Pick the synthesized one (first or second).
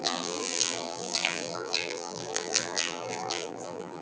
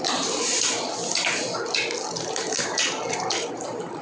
first